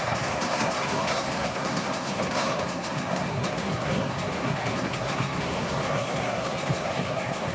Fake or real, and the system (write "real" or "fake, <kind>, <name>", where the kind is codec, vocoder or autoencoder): fake, codec, SNAC